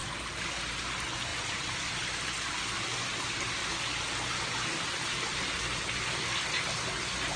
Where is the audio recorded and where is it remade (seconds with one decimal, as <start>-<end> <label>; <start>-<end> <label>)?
0.0-7.4 recorded